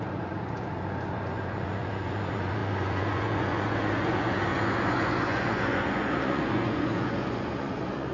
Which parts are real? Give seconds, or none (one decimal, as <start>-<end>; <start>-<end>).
none